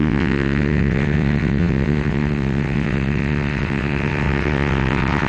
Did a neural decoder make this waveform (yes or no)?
yes